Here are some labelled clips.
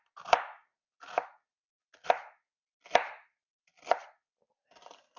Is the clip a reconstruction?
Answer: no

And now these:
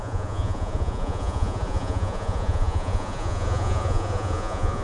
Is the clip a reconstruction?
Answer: yes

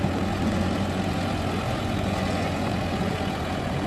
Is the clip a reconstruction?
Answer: yes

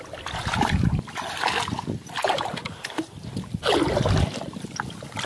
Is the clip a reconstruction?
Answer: no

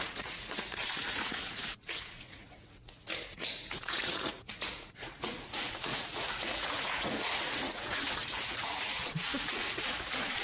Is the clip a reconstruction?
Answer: yes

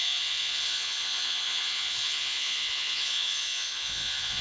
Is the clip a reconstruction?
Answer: yes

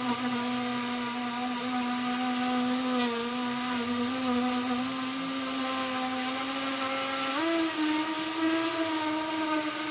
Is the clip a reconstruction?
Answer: no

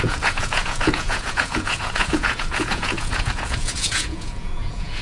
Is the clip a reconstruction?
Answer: yes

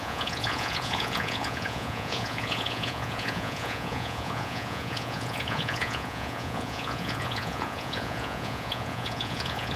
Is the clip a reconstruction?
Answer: yes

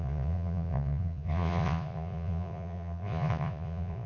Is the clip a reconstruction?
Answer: yes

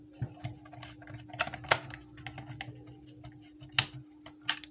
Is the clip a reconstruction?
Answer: no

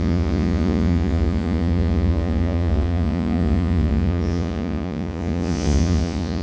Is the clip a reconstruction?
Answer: yes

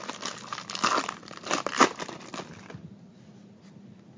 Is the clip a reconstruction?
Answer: no